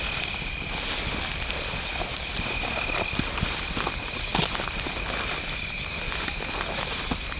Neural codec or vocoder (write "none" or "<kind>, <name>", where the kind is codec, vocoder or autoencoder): none